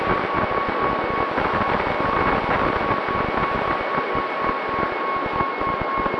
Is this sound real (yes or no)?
yes